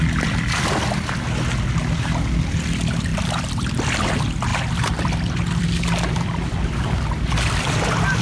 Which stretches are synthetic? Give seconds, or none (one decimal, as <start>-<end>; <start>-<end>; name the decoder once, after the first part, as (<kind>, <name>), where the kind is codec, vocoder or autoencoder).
3.1-4.1 (vocoder, BigVGAN v2); 4.5-7.3